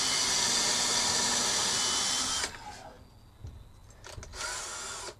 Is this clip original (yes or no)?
yes